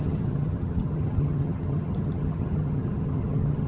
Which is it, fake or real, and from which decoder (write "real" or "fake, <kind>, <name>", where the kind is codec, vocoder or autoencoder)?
fake, vocoder, HiFi-GAN